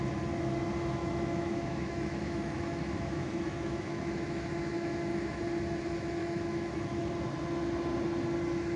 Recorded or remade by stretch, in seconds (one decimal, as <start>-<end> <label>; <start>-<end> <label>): 0.0-1.0 recorded; 1.0-5.4 remade; 5.4-6.2 recorded; 6.2-7.1 remade; 7.1-8.8 recorded